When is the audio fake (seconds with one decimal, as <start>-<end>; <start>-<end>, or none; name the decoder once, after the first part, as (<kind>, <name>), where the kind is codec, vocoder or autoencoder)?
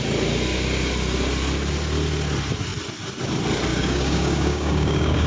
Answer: 3.7-5.3 (codec, DAC)